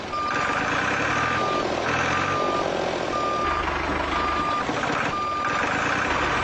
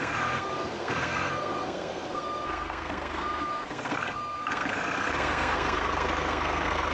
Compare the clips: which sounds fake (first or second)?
second